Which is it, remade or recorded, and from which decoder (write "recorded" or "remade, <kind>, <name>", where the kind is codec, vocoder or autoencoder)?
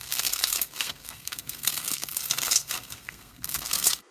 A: remade, codec, SNAC